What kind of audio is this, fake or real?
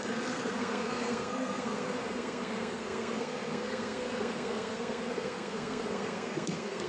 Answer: fake